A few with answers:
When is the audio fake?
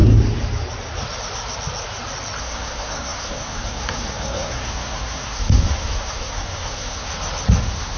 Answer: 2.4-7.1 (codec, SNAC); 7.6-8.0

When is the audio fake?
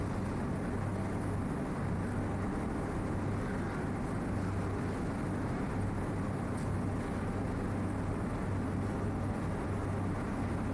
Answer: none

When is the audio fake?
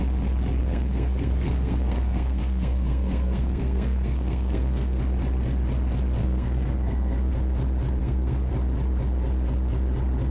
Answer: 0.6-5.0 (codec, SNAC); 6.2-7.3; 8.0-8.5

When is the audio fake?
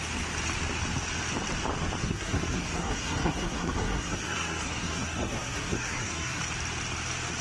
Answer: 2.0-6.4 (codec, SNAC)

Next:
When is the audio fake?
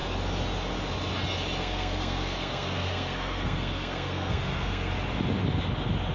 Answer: 1.6-4.9 (codec, SNAC)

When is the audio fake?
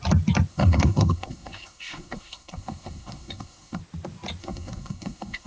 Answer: 0.5-3.8 (codec, SNAC); 4.4-5.5